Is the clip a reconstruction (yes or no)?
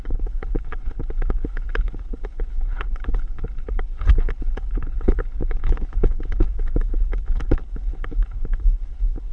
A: yes